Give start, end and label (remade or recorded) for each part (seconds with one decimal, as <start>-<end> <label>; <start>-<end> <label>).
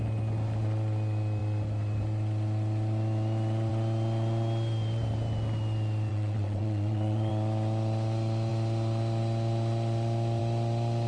0.0-6.1 recorded; 6.1-7.3 remade; 7.3-11.1 recorded